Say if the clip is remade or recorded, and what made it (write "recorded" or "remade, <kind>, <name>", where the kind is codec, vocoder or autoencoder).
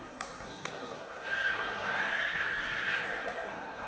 remade, codec, SNAC